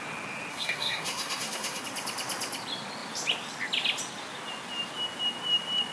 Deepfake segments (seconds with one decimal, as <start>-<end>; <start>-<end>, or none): 0.5-1.8